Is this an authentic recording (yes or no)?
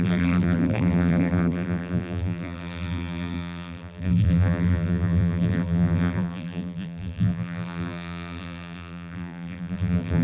no